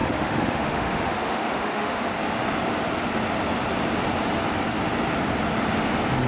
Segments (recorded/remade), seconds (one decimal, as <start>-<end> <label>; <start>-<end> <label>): 0.0-2.0 remade; 2.0-6.3 recorded

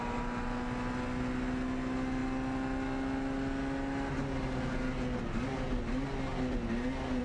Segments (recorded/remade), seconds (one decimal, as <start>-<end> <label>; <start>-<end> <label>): 0.0-7.2 recorded

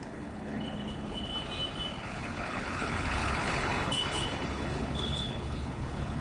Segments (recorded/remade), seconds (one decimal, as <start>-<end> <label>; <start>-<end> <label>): 0.0-1.3 remade; 1.3-1.9 recorded; 1.9-6.2 remade

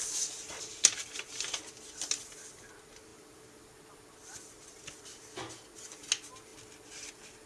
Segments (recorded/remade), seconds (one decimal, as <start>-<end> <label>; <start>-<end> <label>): 0.0-7.5 recorded

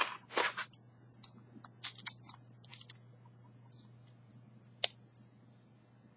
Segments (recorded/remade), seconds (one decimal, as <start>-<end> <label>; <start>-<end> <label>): 0.0-6.2 recorded